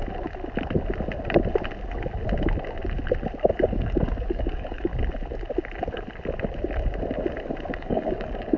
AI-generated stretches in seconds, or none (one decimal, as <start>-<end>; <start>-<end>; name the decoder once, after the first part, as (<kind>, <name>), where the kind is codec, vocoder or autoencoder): 3.5-4.9 (codec, DAC); 7.7-8.6